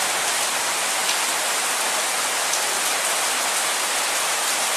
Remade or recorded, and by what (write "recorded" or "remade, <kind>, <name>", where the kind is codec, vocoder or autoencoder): recorded